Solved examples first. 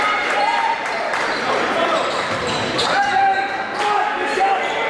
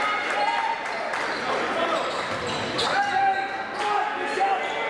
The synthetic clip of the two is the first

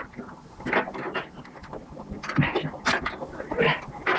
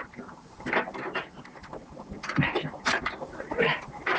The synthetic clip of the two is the second